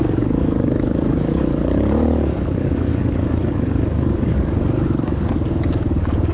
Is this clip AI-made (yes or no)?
yes